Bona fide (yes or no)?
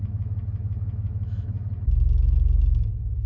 no